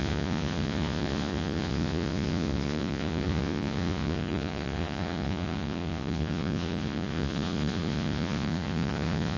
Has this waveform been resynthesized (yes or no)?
yes